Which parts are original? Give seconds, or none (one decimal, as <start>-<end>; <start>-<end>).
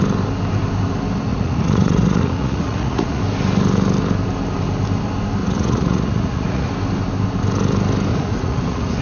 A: 0.0-1.3; 3.2-5.4; 6.7-8.1